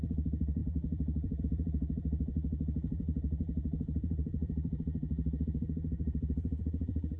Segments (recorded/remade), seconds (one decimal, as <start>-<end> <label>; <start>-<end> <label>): 0.0-7.2 remade

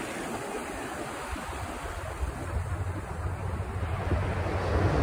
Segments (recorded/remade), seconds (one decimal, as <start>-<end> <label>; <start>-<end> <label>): 0.0-5.0 recorded

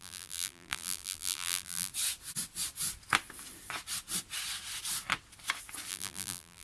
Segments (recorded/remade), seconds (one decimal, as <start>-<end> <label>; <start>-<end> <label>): 0.0-1.9 remade; 1.9-5.9 recorded; 5.9-6.6 remade